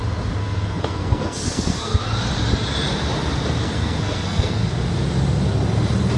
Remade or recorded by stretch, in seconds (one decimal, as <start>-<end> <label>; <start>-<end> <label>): 0.0-0.4 recorded; 0.4-2.0 remade; 2.0-3.6 recorded; 3.6-4.6 remade; 4.6-6.2 recorded